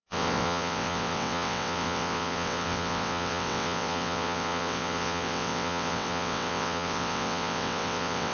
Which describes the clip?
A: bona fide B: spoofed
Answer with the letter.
B